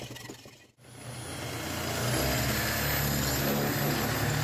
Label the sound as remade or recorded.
recorded